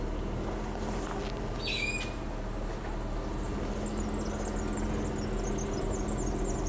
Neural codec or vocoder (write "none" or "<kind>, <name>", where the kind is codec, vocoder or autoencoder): none